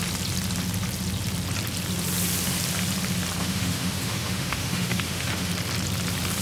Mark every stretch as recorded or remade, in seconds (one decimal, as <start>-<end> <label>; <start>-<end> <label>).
0.0-3.4 recorded; 3.4-5.5 remade; 5.5-6.4 recorded